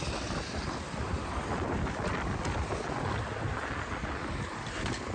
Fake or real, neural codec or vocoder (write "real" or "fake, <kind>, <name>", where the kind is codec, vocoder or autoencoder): real